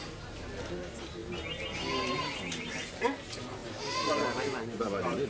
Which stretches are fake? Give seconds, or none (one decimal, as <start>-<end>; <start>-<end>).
none